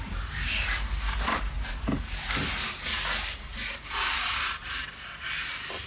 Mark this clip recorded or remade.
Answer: remade